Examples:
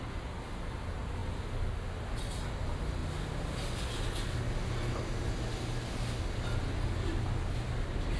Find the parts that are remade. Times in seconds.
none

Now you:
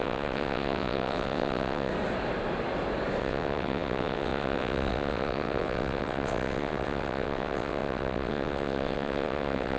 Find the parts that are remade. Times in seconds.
0.0-1.9 (vocoder, WaveNeXt); 3.2-9.8

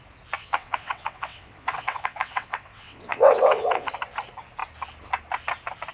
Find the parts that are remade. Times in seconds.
0.4-3.9 (vocoder, WaveNeXt)

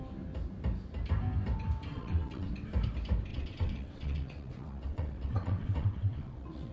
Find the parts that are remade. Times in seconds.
1.9-2.5 (vocoder, WaveNeXt); 3.3-6.7

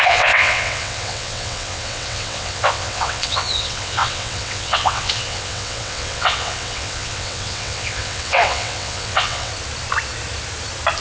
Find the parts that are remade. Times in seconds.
0.0-9.5 (vocoder, WaveNeXt)

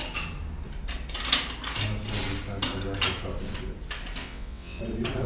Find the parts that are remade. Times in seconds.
4.2-4.8 (vocoder, WaveNeXt)